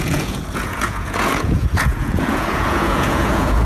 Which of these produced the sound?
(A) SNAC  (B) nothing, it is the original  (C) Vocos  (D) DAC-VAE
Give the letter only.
C